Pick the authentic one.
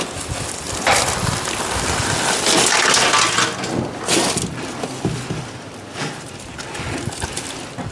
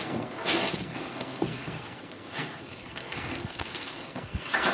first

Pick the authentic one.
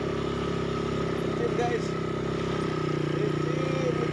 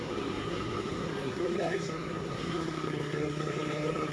first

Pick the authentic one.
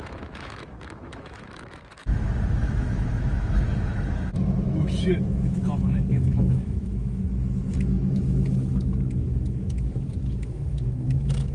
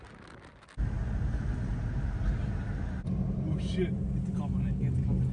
second